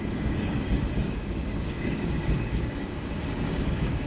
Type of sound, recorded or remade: remade